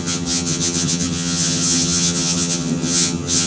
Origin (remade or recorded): remade